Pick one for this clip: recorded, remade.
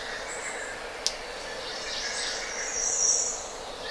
recorded